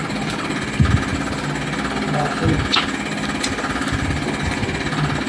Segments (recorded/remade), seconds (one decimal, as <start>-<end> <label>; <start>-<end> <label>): 0.0-5.3 recorded